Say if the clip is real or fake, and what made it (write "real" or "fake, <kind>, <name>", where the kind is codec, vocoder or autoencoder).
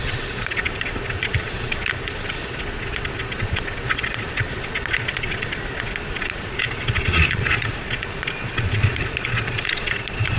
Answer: fake, vocoder, Vocos